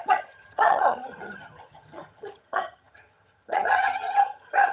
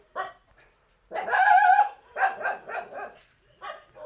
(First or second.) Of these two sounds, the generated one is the first